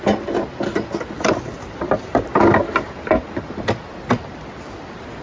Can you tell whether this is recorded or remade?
recorded